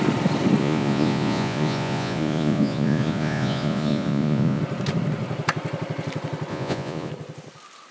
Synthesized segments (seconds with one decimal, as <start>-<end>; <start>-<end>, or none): 0.6-4.6; 6.5-7.1